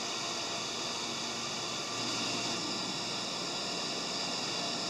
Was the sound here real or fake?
real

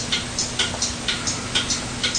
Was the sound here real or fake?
real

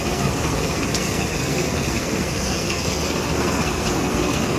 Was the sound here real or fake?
fake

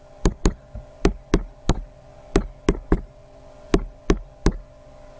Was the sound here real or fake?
real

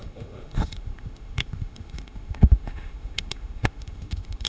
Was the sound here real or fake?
fake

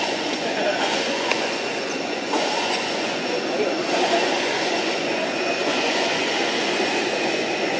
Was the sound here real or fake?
fake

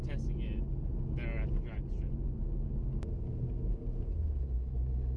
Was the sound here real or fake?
real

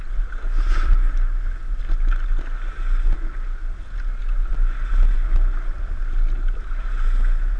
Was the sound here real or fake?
real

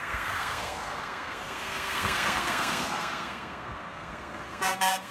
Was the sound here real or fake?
fake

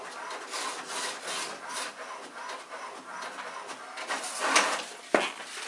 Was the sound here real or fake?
real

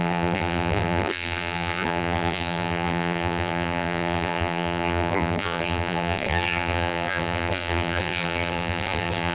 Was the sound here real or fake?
fake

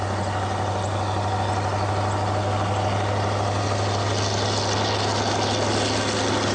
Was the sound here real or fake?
real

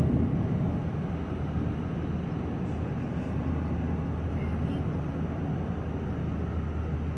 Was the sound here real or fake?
real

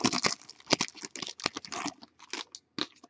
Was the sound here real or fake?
real